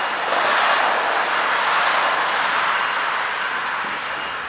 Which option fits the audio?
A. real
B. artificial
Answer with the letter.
A